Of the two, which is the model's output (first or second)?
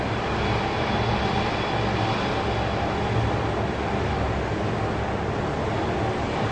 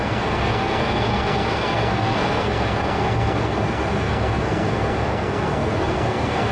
second